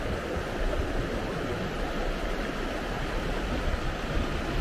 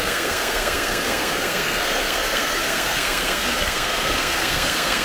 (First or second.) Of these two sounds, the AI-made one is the second